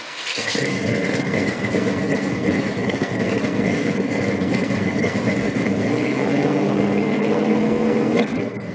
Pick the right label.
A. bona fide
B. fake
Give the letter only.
B